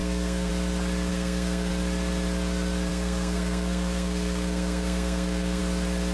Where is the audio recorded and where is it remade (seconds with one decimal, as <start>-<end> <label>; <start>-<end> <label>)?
0.0-0.5 remade; 0.5-1.1 recorded; 1.1-1.7 remade; 1.7-2.9 recorded; 2.9-5.6 remade; 5.6-6.1 recorded